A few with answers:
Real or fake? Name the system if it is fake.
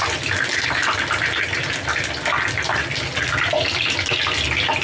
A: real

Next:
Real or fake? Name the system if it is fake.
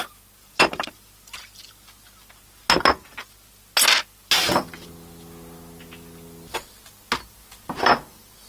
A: real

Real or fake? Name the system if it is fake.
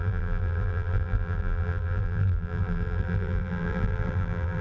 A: fake, vocoder, BigVGAN v2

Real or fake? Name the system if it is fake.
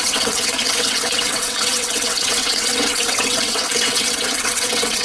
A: fake, vocoder, WaveNeXt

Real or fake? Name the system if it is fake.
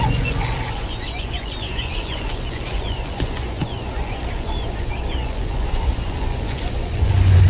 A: fake, vocoder, Vocos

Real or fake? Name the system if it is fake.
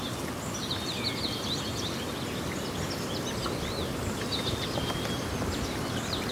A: real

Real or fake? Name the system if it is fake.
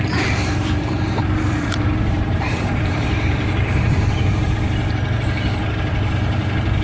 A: fake, vocoder, BigVGAN v2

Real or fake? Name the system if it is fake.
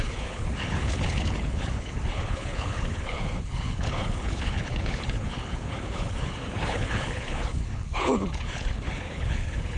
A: fake, codec, HILCodec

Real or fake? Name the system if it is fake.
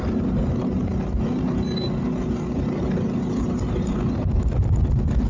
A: real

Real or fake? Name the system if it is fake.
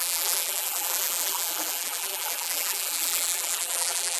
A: fake, vocoder, BigVGAN v2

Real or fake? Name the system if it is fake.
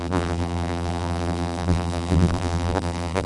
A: fake, vocoder, BigVGAN v2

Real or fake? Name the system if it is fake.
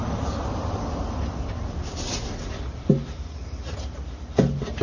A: real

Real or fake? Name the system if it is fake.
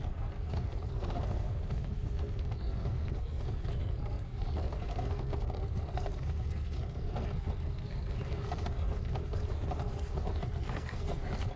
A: fake, codec, SNAC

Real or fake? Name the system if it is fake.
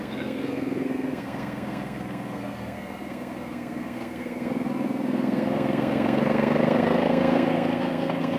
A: fake, codec, SNAC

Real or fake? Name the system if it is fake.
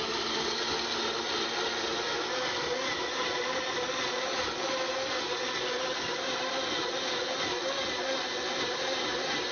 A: real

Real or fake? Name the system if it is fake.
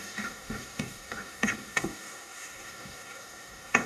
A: fake, codec, DAC